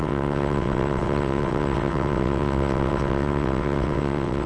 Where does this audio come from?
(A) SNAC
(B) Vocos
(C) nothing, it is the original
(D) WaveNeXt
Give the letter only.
D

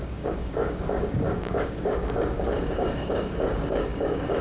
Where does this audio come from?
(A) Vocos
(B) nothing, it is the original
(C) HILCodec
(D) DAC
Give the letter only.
D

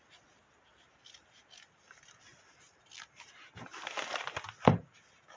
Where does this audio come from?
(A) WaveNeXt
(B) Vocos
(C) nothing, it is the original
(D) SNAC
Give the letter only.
C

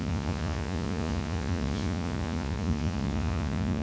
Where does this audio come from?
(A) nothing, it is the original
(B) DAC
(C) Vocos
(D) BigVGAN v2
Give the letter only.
C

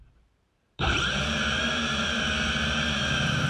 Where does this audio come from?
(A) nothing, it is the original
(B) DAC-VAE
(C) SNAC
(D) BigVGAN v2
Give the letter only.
D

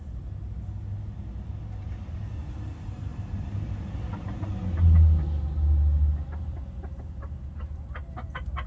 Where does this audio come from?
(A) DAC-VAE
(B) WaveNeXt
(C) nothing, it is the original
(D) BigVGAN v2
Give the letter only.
C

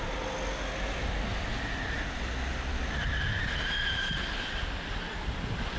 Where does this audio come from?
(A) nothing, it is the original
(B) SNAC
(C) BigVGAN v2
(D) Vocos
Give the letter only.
A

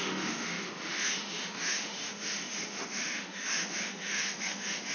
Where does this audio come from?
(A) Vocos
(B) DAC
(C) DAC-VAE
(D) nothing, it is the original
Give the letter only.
C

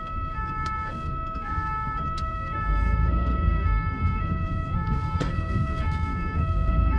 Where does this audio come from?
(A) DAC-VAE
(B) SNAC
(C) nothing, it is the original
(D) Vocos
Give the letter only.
B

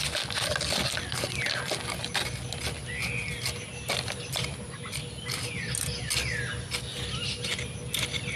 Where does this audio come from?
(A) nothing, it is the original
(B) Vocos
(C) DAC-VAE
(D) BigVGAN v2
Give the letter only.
A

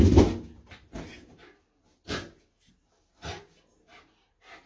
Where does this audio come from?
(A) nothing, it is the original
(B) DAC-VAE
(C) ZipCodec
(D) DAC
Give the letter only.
A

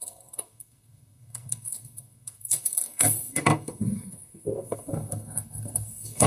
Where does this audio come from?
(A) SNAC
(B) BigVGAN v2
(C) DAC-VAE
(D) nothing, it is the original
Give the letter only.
A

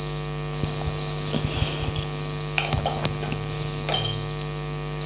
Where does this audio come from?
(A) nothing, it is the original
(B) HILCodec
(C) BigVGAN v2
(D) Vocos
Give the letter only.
A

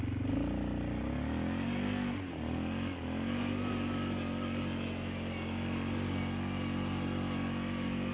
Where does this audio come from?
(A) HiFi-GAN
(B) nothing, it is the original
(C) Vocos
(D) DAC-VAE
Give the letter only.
B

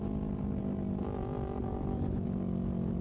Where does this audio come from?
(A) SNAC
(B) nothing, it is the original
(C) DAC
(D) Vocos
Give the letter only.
B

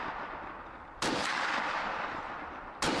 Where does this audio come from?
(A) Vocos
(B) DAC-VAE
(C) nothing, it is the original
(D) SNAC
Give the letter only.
C